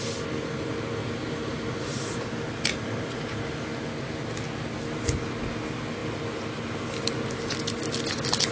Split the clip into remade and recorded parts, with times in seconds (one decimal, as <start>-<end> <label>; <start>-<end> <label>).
0.0-1.0 recorded; 1.0-3.2 remade; 3.2-8.5 recorded